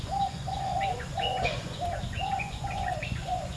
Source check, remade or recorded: remade